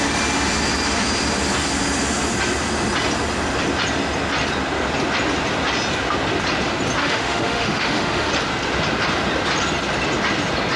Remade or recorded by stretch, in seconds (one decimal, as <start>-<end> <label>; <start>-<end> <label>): 0.0-7.0 recorded; 7.0-8.3 remade; 8.3-10.8 recorded